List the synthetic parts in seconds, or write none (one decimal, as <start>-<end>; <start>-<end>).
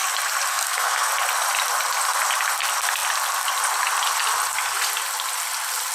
0.5-1.1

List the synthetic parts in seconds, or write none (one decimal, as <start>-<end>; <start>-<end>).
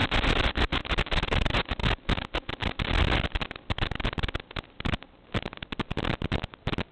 none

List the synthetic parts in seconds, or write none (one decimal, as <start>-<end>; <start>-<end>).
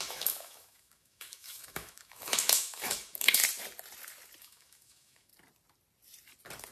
0.0-3.4; 4.4-5.3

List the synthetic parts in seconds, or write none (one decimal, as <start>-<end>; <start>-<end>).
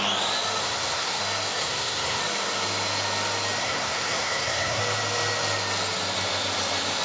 0.6-1.2; 1.6-2.2; 3.6-4.8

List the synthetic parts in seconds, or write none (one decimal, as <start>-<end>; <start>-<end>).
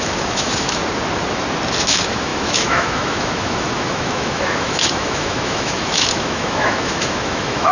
0.0-0.8; 1.8-7.7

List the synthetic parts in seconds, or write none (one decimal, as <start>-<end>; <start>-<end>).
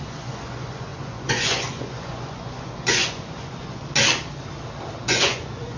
0.0-3.8; 5.0-5.8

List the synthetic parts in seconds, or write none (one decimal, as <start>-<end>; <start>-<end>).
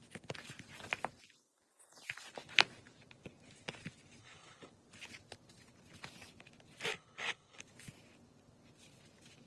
4.2-4.7; 6.9-7.6